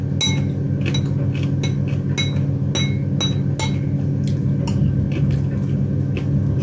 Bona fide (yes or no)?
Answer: yes